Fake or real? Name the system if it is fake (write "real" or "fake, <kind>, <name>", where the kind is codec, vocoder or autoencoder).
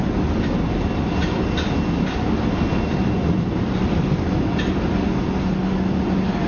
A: real